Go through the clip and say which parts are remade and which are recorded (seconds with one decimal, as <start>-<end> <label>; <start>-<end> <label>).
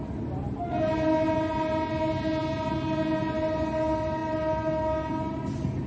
0.0-5.9 recorded